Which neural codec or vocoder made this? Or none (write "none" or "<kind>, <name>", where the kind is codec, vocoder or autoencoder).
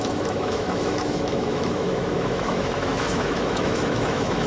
autoencoder, DAC-VAE